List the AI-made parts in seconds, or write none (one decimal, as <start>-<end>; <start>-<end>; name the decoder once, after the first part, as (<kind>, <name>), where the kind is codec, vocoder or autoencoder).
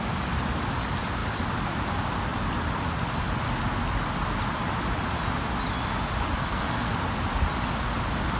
6.4-7.0 (codec, SNAC)